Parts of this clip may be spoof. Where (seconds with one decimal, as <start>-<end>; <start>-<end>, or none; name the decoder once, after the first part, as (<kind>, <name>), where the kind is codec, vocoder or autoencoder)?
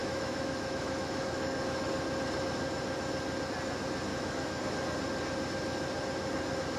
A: 0.0-1.9 (autoencoder, DAC-VAE); 4.1-4.7